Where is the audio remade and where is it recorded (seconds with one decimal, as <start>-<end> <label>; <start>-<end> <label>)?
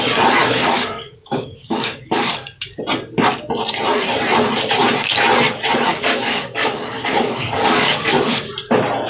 0.0-0.4 recorded; 0.4-2.8 remade; 2.8-5.9 recorded; 5.9-8.4 remade; 8.4-9.1 recorded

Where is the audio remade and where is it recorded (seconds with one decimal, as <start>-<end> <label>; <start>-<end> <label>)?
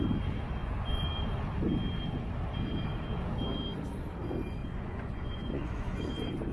0.0-0.6 recorded; 0.6-1.1 remade; 1.1-4.6 recorded; 4.6-6.1 remade; 6.1-6.5 recorded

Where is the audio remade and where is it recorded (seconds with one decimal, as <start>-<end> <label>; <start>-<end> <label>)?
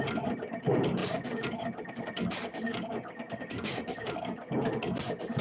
0.0-2.7 recorded; 2.7-4.6 remade; 4.6-5.4 recorded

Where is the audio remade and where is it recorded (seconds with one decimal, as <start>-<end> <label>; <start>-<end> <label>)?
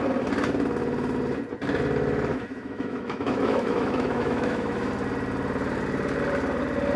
0.0-2.3 recorded; 2.3-4.9 remade; 4.9-7.0 recorded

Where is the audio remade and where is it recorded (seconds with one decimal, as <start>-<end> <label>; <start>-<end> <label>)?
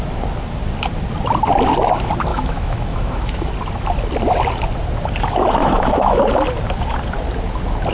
0.0-2.3 recorded; 2.3-3.5 remade; 3.5-5.6 recorded; 5.6-6.2 remade; 6.2-7.9 recorded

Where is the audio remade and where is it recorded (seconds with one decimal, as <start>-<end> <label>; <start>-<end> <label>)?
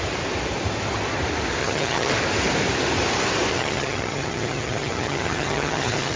0.0-1.6 recorded; 1.6-2.1 remade; 2.1-3.5 recorded; 3.5-6.2 remade